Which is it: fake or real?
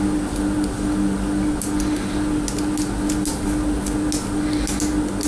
real